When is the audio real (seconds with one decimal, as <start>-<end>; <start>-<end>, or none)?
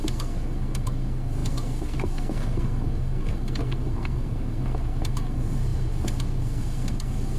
none